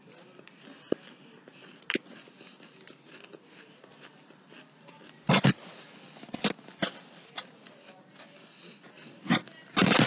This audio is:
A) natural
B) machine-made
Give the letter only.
A